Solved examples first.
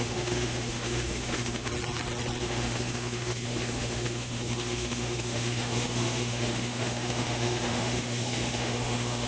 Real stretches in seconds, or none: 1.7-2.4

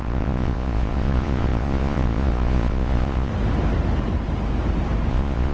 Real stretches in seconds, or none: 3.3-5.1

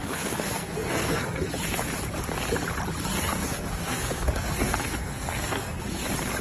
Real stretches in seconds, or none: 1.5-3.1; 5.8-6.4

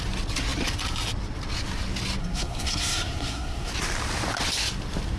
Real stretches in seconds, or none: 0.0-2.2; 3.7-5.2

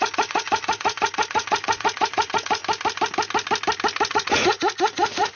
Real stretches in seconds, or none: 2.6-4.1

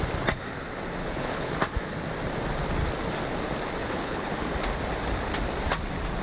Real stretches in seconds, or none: 0.0-1.0; 1.5-3.8; 4.3-6.2